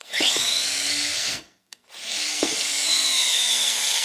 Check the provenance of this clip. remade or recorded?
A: remade